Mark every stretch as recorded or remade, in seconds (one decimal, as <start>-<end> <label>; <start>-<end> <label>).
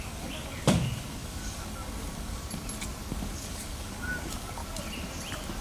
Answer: 0.0-2.4 remade; 2.4-3.1 recorded; 3.1-4.6 remade; 4.6-5.6 recorded